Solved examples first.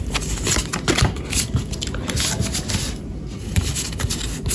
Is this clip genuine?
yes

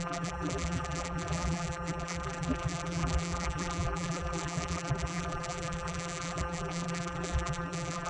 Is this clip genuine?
no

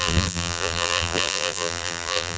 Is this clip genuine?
no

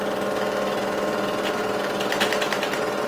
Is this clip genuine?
yes